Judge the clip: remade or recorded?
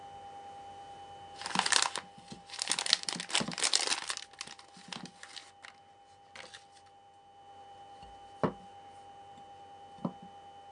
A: recorded